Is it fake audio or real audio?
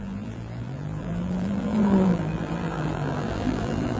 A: fake